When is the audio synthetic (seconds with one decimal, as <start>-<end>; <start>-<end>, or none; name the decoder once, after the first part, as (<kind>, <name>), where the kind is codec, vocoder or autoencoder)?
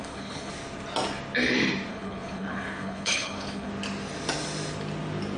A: 0.0-0.5 (codec, HILCodec); 1.9-3.7